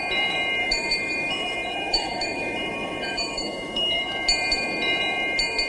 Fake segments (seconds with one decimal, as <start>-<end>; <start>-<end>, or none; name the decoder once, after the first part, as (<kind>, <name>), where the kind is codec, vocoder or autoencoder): 0.6-4.0 (autoencoder, DAC-VAE)